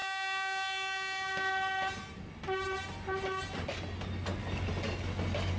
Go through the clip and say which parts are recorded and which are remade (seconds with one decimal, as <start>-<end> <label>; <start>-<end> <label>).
0.0-5.6 recorded